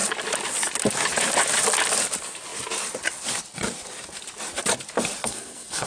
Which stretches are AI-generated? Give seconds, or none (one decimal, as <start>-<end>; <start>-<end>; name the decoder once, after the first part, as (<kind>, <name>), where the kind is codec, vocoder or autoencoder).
5.2-5.9 (codec, SNAC)